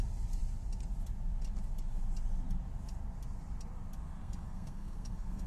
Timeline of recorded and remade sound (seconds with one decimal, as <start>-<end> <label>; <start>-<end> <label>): 0.0-4.2 recorded; 4.2-5.5 remade